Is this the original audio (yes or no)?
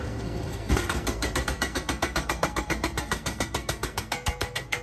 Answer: no